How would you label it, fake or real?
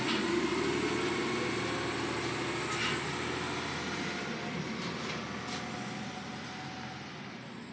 real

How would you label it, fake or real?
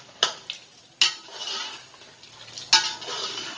real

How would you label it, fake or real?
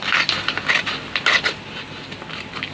real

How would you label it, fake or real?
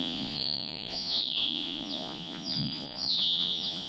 fake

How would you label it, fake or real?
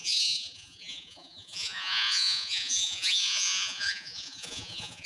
fake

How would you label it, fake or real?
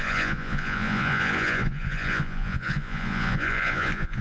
fake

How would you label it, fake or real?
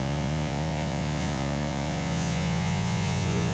fake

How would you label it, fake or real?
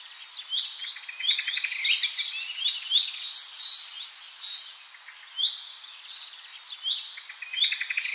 real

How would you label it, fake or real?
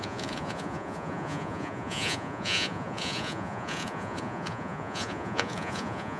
fake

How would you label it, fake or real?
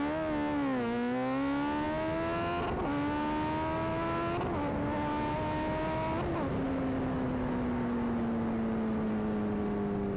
real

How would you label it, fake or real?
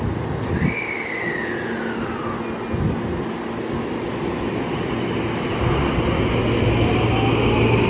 real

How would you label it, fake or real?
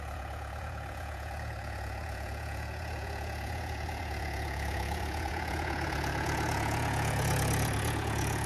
fake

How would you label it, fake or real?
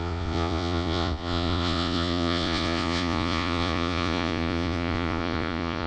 fake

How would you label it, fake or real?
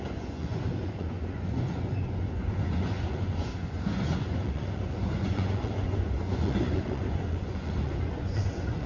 fake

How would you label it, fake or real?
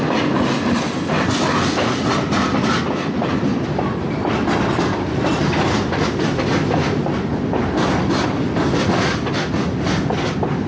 real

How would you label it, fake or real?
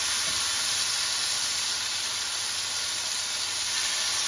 real